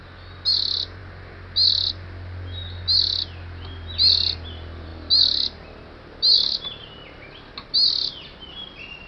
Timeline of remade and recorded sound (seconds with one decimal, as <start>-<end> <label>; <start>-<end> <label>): 0.0-9.1 recorded